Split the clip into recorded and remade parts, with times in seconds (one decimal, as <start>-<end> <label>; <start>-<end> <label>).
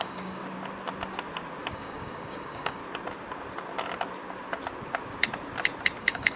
0.0-0.4 remade; 0.4-1.7 recorded; 1.7-2.8 remade; 2.8-6.0 recorded; 6.0-6.4 remade